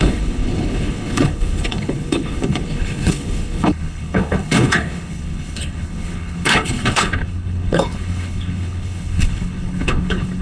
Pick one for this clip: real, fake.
fake